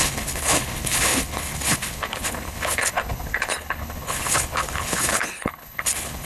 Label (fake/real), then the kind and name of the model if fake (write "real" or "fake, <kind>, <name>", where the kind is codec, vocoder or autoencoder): fake, codec, HILCodec